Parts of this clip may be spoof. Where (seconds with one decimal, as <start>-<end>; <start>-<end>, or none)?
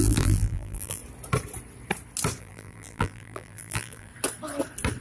0.0-1.0; 2.4-4.1